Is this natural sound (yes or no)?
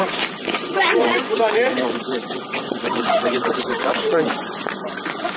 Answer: no